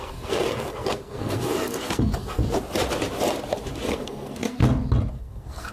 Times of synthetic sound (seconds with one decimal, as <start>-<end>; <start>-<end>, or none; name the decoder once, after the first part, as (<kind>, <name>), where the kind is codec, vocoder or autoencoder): 0.0-2.4 (codec, SNAC); 3.9-4.6; 5.1-5.7